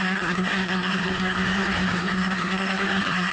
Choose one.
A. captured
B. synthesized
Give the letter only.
B